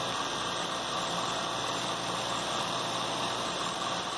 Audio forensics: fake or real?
fake